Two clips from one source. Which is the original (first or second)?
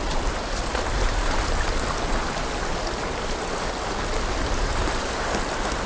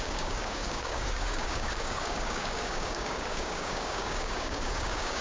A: first